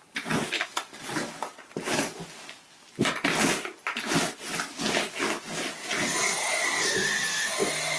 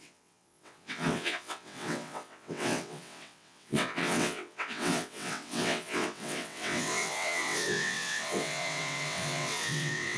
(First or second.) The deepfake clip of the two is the second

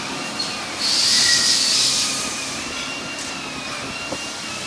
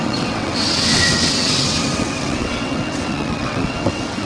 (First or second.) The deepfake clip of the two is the second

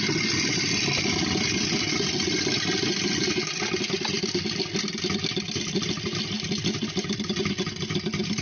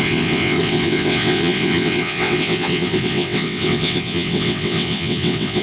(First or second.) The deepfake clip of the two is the second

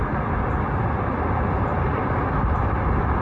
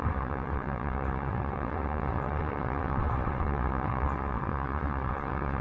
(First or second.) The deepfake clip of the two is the second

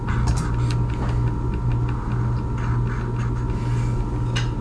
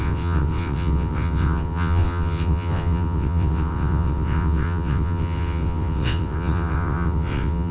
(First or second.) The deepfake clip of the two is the second